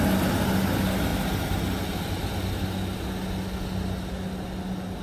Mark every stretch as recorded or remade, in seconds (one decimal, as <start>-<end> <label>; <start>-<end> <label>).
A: 0.0-5.0 recorded